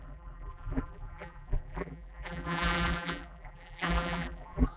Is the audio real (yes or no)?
no